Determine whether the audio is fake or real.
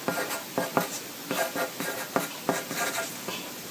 real